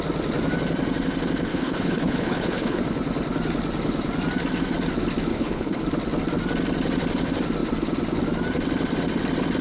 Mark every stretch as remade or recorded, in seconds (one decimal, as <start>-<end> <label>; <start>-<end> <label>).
0.0-1.5 recorded; 1.5-2.8 remade; 2.8-5.3 recorded; 5.3-5.8 remade; 5.8-9.6 recorded